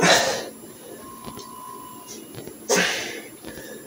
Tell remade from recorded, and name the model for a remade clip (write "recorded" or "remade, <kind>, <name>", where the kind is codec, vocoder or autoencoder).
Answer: recorded